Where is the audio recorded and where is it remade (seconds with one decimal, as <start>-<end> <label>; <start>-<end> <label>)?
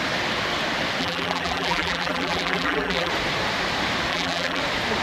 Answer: 0.0-1.0 recorded; 1.0-3.1 remade; 3.1-4.1 recorded; 4.1-4.6 remade; 4.6-5.0 recorded